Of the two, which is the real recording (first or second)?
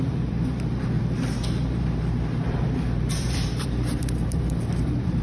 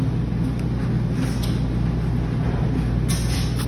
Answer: second